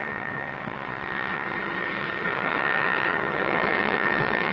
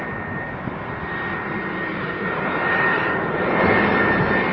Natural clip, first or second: second